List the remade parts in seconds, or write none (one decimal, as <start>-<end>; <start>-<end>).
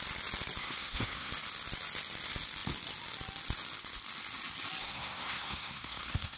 0.6-1.3; 4.8-6.4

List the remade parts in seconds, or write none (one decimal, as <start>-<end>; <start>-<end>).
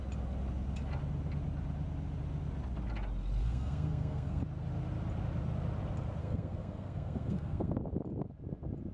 3.4-4.4; 6.2-7.8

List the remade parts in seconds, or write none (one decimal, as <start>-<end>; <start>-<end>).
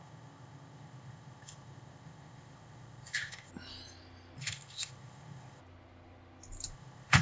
0.0-3.5; 4.4-5.6; 6.7-7.2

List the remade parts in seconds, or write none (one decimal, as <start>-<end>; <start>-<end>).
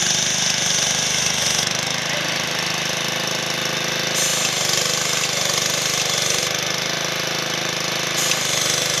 none